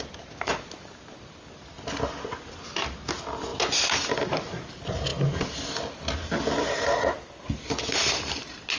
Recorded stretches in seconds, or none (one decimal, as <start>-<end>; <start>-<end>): 0.0-8.8